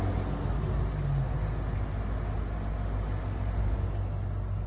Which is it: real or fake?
real